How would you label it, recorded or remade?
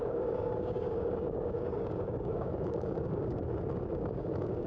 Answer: remade